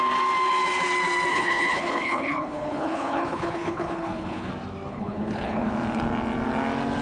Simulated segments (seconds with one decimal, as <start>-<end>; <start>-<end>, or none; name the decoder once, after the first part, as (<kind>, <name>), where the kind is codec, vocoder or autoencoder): 1.3-4.5 (codec, HILCodec); 4.9-5.7